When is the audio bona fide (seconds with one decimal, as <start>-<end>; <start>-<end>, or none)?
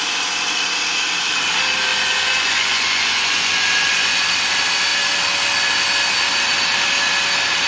0.0-1.9; 4.1-7.7